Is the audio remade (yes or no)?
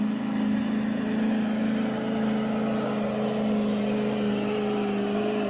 no